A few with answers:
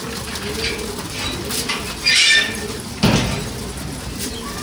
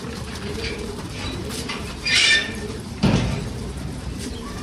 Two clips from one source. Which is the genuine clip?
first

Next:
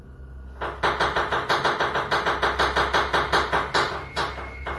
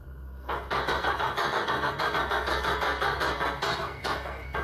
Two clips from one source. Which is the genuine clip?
first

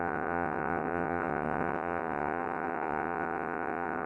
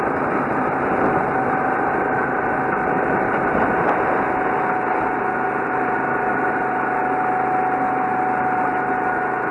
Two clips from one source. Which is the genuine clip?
second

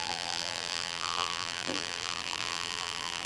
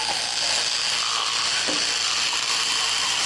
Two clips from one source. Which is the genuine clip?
second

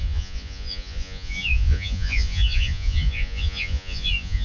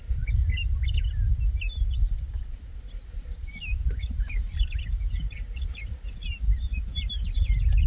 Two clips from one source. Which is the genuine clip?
second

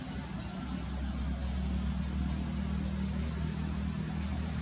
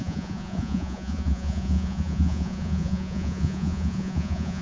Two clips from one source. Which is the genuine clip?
first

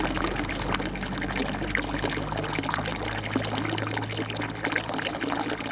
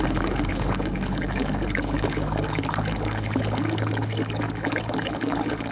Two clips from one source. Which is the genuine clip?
first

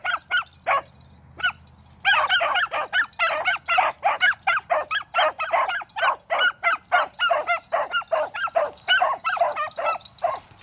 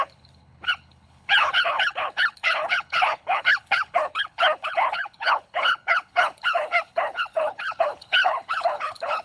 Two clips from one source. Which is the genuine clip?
first